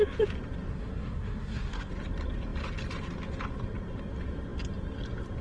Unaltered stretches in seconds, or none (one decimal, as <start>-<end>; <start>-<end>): 0.0-0.7; 1.9-5.4